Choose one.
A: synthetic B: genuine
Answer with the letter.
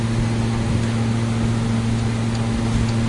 B